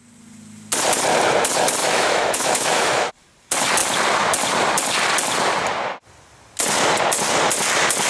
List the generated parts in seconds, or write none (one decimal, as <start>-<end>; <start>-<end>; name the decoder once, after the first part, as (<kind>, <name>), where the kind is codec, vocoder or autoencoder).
1.8-3.1 (autoencoder, DAC-VAE)